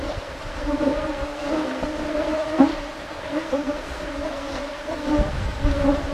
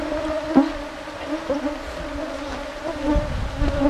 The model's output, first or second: first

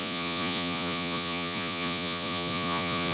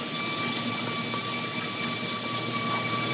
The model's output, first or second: first